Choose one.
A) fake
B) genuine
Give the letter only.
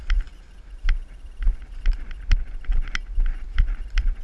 B